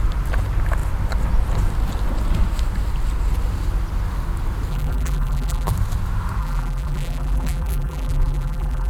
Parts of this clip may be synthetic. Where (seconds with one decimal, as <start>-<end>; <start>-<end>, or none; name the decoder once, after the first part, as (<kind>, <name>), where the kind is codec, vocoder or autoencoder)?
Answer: 4.7-5.7 (vocoder, BigVGAN v2); 6.4-8.9